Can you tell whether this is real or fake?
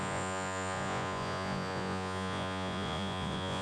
fake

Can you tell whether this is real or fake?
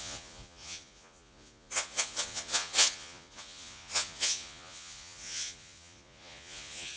fake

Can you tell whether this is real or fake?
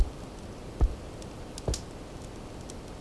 real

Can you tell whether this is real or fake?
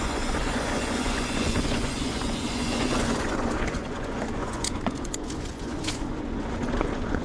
fake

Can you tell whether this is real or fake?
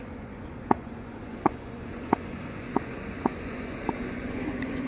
fake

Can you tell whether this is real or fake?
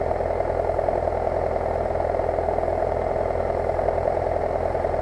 real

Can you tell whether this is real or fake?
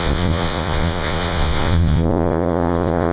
fake